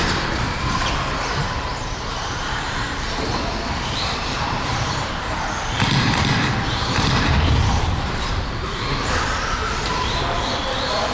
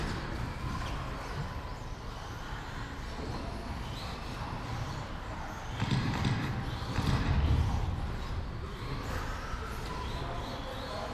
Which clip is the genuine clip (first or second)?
second